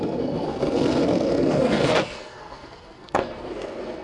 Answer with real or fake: fake